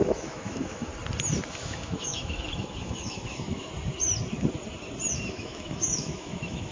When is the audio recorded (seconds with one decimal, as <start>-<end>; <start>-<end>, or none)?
0.9-1.5; 3.7-5.1